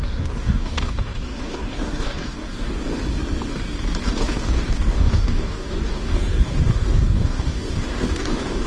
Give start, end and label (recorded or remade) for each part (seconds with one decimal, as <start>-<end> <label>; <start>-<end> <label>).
0.0-2.8 remade; 2.8-4.0 recorded; 4.0-8.7 remade